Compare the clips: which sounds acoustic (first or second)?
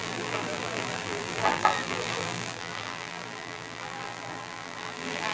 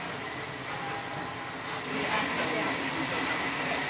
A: second